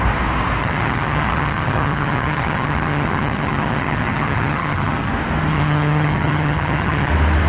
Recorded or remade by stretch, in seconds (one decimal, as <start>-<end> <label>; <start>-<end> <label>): 0.0-0.6 recorded; 0.6-5.1 remade; 5.1-5.5 recorded; 5.5-7.1 remade; 7.1-7.5 recorded